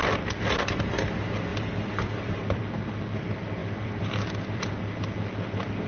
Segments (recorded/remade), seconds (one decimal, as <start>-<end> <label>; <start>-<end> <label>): 0.0-1.5 recorded; 1.5-2.6 remade; 2.6-3.6 recorded; 3.6-4.8 remade; 4.8-5.9 recorded